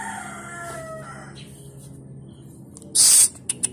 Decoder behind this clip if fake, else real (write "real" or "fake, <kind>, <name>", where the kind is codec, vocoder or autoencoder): real